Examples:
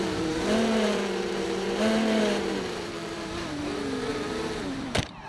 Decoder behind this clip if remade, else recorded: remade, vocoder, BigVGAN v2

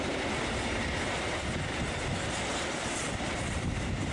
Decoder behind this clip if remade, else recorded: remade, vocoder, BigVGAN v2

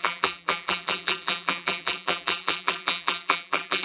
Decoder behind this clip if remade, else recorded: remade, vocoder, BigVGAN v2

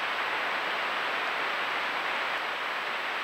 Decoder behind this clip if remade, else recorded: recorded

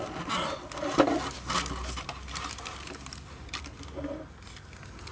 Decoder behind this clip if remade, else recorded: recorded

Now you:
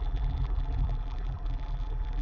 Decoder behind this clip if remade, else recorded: remade, vocoder, BigVGAN v2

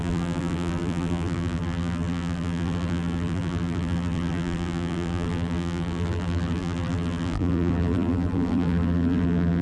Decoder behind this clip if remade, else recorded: remade, vocoder, BigVGAN v2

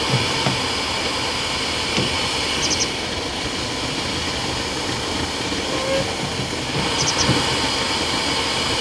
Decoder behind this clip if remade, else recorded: recorded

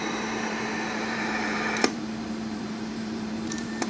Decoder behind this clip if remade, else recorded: remade, vocoder, BigVGAN v2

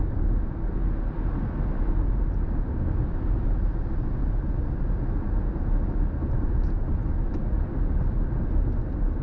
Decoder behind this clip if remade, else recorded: recorded